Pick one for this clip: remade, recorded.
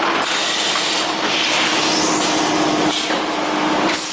recorded